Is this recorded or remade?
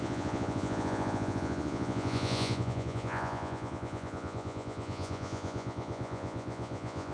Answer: remade